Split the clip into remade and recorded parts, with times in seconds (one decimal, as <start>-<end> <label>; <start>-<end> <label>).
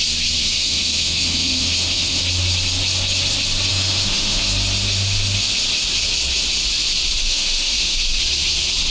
0.0-0.4 recorded; 0.4-2.2 remade; 2.2-3.7 recorded; 3.7-4.4 remade; 4.4-7.2 recorded; 7.2-8.2 remade; 8.2-8.9 recorded